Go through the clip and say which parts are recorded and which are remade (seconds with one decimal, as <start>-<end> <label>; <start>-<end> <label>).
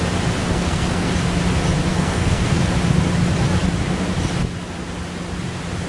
0.0-0.4 recorded; 0.4-1.1 remade; 1.1-1.9 recorded; 1.9-2.6 remade; 2.6-5.9 recorded